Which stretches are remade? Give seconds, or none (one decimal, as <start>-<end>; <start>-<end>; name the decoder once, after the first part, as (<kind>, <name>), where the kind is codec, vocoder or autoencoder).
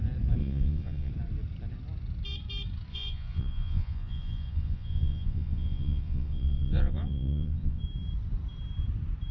0.4-1.1 (vocoder, Vocos); 2.9-7.8